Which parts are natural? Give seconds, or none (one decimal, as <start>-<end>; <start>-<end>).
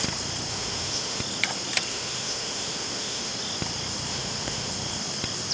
0.0-0.5; 1.2-1.9; 3.3-4.1; 4.7-5.5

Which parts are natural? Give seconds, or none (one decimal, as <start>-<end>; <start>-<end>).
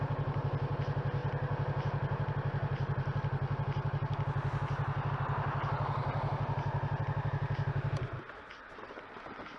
0.0-9.6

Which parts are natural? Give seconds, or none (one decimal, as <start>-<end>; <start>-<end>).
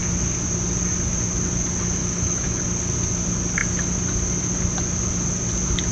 0.0-2.0; 2.6-5.9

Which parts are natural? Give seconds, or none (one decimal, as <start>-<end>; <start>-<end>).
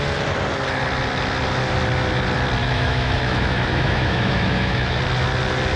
0.0-2.6; 5.0-5.8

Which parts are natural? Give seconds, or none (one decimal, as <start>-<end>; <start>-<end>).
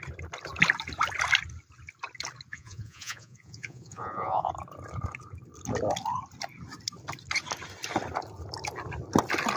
0.0-2.5; 4.5-9.6